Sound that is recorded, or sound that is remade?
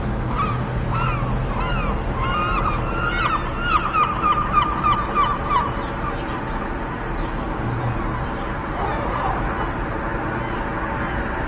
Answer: recorded